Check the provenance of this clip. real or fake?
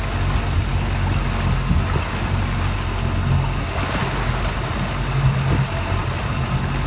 real